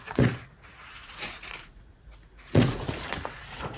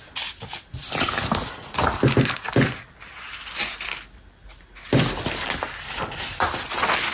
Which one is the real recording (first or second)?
second